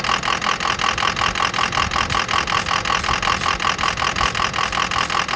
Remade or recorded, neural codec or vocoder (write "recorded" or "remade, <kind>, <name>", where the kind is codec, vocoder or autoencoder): recorded